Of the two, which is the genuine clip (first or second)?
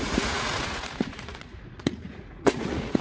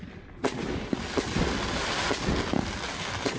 second